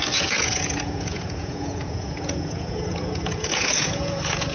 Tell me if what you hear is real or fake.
fake